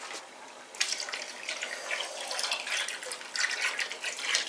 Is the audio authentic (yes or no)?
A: yes